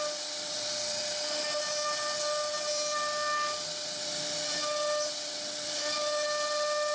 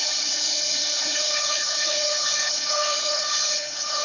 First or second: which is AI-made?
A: second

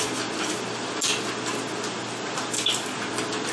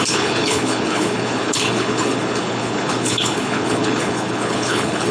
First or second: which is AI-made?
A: second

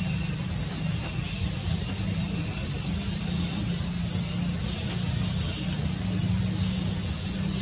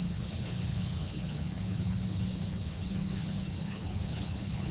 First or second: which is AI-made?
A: second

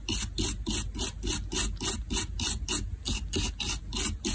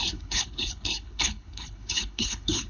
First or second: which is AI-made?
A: second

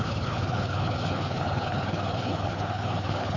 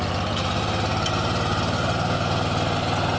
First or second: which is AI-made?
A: first